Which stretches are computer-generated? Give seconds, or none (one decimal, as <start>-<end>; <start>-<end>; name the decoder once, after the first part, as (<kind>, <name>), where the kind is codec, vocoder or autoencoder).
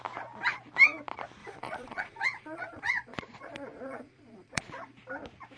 1.4-4.6 (vocoder, Vocos)